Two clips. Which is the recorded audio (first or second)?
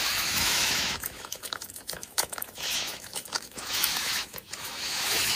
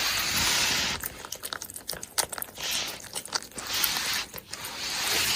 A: second